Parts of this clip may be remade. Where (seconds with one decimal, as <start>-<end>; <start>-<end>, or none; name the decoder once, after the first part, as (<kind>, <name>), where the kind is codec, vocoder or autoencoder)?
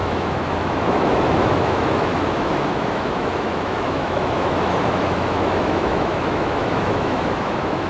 0.0-7.9 (autoencoder, DAC-VAE)